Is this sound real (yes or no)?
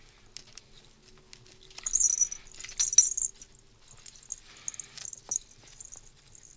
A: yes